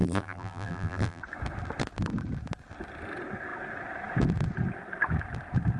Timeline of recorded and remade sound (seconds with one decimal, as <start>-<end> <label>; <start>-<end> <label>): 0.0-1.2 remade; 1.2-5.8 recorded